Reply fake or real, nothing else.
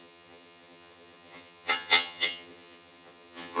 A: fake